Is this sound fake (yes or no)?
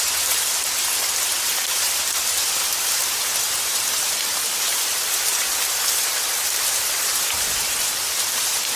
yes